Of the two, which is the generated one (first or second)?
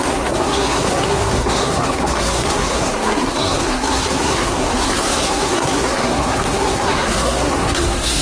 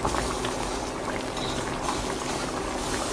first